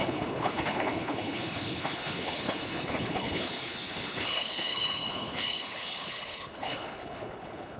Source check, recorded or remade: remade